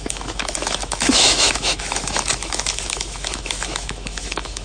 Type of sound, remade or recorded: remade